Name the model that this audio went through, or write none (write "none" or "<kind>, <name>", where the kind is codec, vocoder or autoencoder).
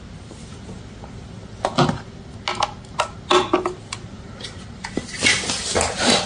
none